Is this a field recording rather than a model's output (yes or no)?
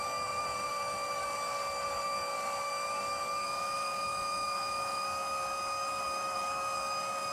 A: no